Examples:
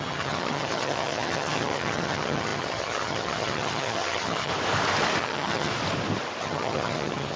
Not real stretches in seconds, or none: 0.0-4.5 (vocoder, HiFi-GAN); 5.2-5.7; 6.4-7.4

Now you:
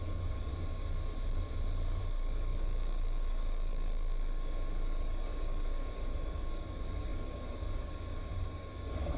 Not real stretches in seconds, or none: 0.0-0.5 (codec, DAC); 2.0-9.2

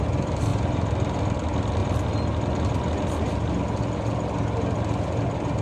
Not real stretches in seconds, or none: 0.5-1.2 (vocoder, BigVGAN v2)

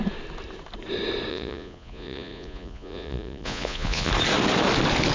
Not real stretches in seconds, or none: 1.3-4.1 (vocoder, Vocos)